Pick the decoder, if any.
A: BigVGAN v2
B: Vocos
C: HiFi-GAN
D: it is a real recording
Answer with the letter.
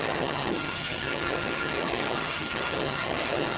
C